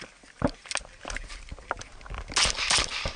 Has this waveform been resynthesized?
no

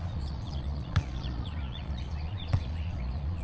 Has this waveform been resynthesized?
yes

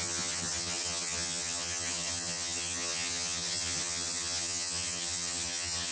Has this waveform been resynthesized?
yes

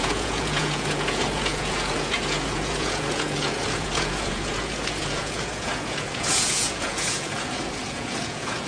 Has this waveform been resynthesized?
yes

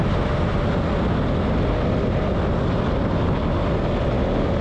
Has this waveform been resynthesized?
no